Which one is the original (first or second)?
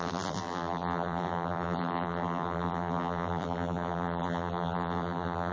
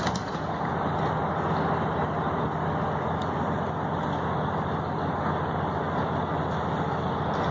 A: second